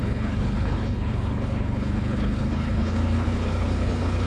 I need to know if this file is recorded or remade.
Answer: remade